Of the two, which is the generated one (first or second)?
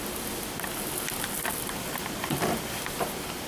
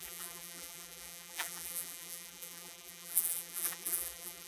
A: second